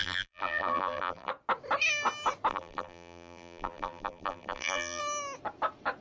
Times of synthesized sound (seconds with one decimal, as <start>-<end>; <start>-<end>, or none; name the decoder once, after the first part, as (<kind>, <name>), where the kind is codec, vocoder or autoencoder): 0.0-1.3 (vocoder, BigVGAN v2); 2.5-5.0

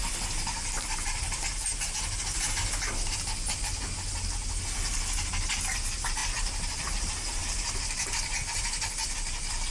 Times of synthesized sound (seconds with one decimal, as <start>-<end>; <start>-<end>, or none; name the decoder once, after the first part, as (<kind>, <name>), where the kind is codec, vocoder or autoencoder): none

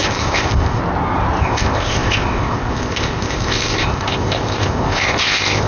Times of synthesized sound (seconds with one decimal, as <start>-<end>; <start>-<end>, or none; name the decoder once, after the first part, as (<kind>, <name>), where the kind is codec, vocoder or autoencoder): 0.0-0.8 (codec, ZipCodec); 1.4-5.7

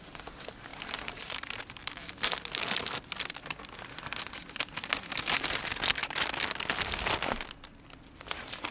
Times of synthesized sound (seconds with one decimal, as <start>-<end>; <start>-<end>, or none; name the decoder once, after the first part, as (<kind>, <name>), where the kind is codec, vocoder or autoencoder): 0.7-1.9 (vocoder, BigVGAN v2)

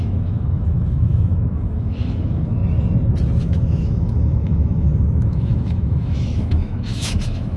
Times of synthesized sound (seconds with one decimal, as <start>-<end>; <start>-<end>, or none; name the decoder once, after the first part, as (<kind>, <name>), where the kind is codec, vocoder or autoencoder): 0.0-2.6 (autoencoder, DAC-VAE); 3.4-7.6

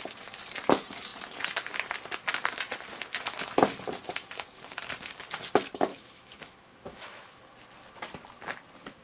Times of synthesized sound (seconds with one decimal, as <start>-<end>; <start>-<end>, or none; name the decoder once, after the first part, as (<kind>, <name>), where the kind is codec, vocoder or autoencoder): 5.9-7.4 (autoencoder, DAC-VAE)

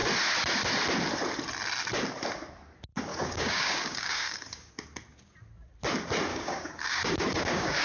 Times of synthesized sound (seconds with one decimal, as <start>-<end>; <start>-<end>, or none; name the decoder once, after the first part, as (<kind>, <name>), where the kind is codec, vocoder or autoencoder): 3.1-4.7 (codec, DAC); 6.3-7.8

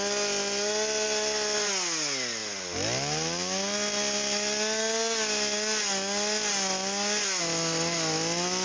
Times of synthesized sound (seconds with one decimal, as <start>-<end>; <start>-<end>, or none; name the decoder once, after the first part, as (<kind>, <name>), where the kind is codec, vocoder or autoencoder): none